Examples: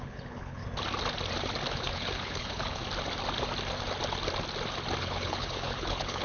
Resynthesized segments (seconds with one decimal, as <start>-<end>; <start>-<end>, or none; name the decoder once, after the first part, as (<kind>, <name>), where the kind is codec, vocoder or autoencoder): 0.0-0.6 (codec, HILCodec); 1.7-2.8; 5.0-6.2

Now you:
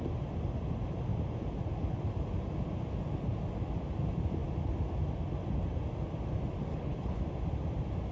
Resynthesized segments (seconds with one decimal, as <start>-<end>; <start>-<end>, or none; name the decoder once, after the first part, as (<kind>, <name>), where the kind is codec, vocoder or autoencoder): 6.7-7.2 (codec, HILCodec)

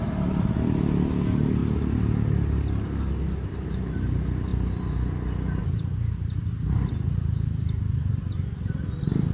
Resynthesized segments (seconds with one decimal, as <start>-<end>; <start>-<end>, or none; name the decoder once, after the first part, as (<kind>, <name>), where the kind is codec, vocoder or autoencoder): none

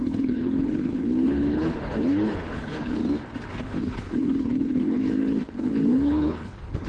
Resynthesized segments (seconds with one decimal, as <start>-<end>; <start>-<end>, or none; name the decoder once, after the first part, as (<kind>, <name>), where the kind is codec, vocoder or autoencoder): 0.0-3.0 (codec, HILCodec); 3.5-6.9

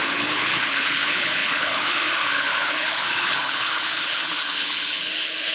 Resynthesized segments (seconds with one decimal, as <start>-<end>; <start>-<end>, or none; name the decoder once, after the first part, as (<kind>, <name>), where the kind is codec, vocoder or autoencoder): 0.0-5.5 (codec, HILCodec)

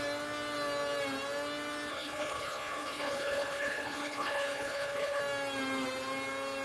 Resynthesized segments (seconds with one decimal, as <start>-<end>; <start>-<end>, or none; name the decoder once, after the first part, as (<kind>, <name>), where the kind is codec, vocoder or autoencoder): 1.9-5.2 (codec, HILCodec)

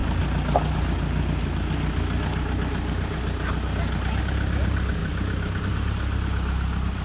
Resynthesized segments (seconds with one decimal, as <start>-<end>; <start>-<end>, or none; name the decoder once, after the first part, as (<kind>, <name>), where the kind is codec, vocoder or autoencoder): none